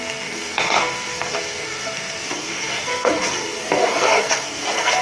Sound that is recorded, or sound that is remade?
remade